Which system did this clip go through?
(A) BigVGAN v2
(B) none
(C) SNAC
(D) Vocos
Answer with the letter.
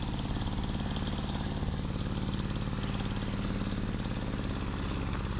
B